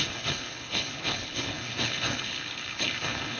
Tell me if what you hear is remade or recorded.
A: remade